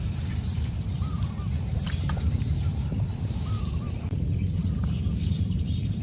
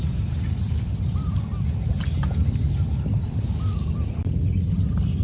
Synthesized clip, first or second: first